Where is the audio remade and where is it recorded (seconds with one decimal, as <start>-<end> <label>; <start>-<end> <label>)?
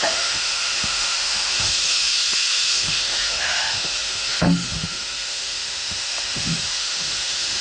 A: 0.0-7.6 remade